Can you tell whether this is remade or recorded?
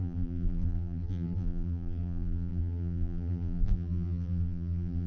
remade